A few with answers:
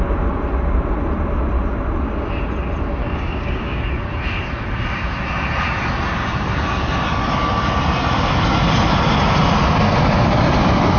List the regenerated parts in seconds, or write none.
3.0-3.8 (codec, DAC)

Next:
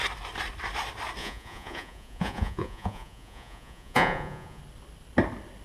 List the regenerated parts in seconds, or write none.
1.2-4.6 (vocoder, Vocos)

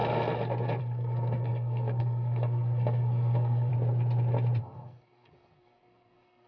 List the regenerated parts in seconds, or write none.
0.8-3.7 (codec, SNAC); 4.6-6.5

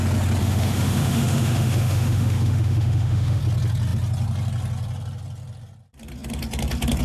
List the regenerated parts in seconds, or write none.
0.4-3.4 (autoencoder, DAC-VAE)